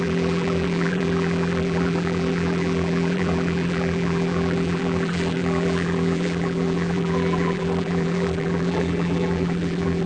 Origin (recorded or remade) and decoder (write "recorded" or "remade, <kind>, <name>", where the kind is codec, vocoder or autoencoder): remade, vocoder, BigVGAN v2